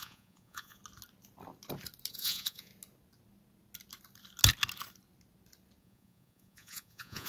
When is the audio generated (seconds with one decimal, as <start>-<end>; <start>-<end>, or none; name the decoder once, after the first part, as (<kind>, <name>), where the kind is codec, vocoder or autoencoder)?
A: 0.0-0.8 (vocoder, Vocos); 2.1-2.7; 5.8-7.3